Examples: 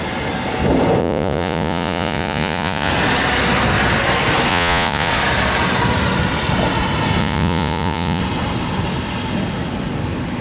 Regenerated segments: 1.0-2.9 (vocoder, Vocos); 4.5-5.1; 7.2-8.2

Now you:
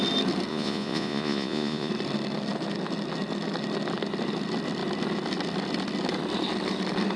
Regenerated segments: 0.5-1.9 (vocoder, Vocos)

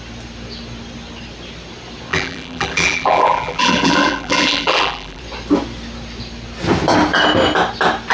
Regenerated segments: 2.1-5.2 (vocoder, BigVGAN v2)